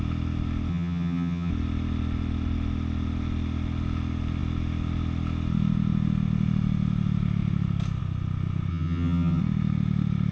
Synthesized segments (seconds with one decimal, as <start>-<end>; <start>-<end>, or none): 0.7-1.5; 8.7-9.4